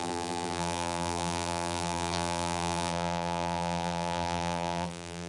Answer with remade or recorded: remade